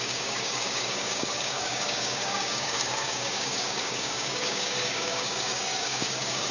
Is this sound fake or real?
fake